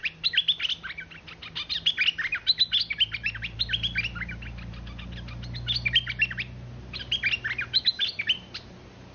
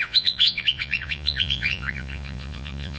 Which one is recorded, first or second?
first